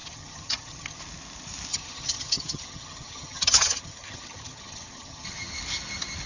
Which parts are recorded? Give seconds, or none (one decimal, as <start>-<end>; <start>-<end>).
1.0-1.7; 5.5-6.3